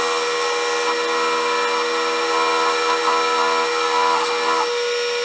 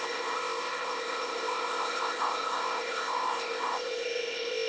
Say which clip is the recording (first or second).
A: first